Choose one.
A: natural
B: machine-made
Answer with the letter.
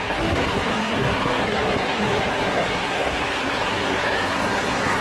B